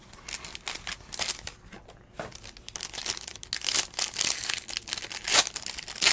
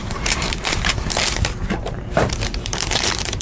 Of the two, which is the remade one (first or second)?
second